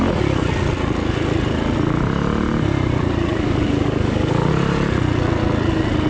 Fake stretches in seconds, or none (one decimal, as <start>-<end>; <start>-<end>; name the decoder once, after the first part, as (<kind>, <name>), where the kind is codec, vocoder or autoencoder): 3.3-4.5 (codec, DAC)